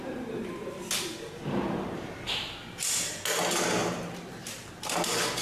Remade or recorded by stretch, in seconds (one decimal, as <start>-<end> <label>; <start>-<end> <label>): 0.0-3.8 recorded; 3.8-4.7 remade; 4.7-5.4 recorded